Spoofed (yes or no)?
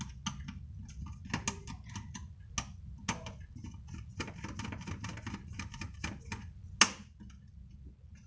no